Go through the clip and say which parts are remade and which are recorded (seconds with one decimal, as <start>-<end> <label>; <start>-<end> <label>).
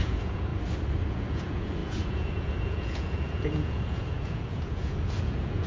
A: 0.0-0.5 remade; 0.5-1.1 recorded; 1.1-5.7 remade